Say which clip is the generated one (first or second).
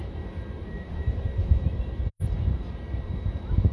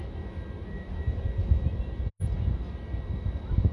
first